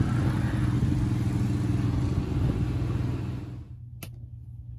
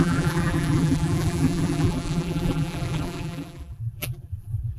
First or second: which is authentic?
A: first